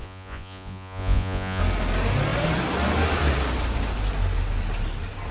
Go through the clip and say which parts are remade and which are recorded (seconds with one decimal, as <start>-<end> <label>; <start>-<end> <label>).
0.0-1.6 remade; 1.6-5.3 recorded